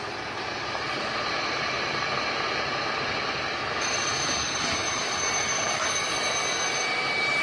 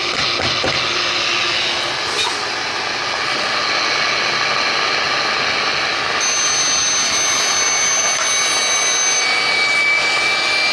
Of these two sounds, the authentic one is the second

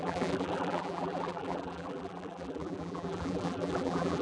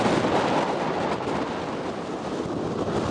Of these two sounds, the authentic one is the second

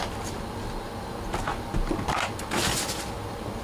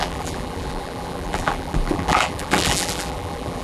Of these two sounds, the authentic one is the first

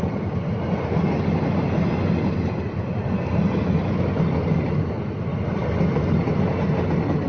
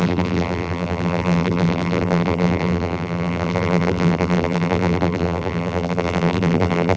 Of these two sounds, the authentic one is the first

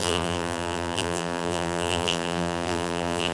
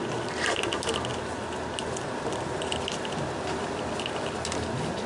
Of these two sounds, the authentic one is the second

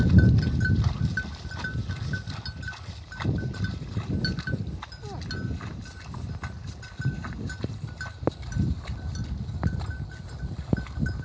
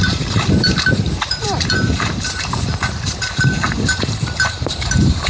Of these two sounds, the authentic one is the first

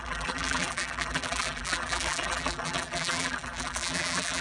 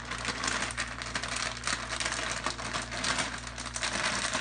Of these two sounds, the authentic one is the second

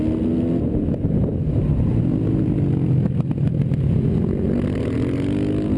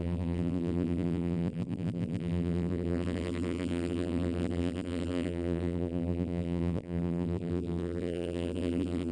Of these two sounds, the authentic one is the first